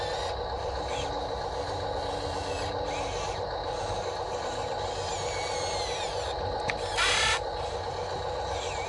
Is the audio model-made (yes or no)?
no